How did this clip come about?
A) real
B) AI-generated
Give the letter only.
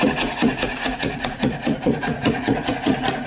B